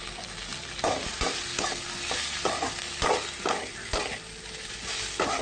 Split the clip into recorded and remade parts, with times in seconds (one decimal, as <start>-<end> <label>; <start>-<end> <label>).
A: 0.0-5.4 recorded